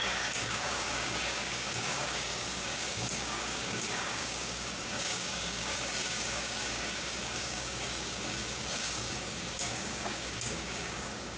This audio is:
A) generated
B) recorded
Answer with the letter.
A